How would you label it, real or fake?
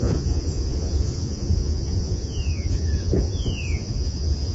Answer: fake